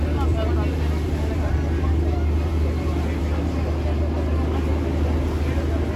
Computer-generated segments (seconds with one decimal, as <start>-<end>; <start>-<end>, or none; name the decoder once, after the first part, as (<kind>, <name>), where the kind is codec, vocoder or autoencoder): none